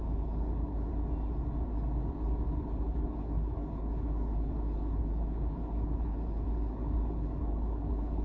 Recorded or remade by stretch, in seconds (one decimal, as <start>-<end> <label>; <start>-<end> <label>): 0.0-0.9 remade; 0.9-2.8 recorded; 2.8-8.2 remade